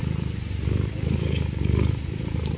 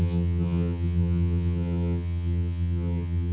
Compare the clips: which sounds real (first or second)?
first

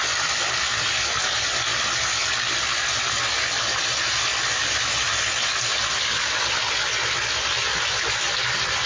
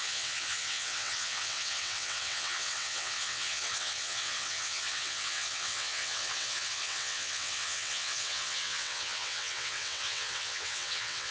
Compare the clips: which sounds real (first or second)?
first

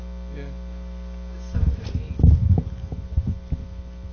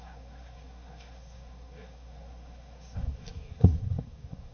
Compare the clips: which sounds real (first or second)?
first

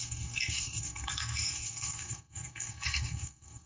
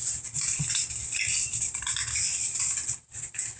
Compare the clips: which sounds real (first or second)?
second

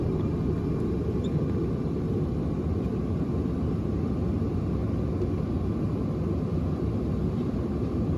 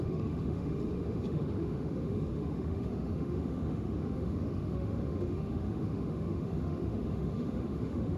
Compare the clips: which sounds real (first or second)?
first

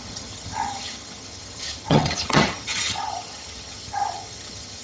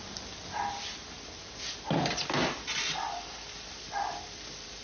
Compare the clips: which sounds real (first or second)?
second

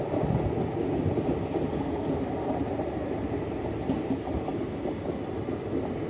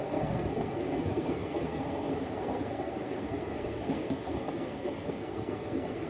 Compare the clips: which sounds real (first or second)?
first